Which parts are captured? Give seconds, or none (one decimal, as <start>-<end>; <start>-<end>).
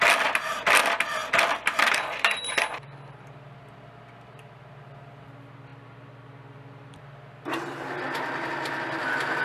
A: 0.0-5.7; 7.0-9.4